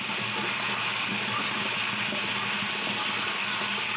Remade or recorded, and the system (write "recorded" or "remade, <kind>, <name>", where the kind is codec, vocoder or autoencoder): recorded